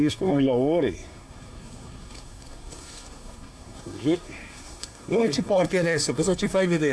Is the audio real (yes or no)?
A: no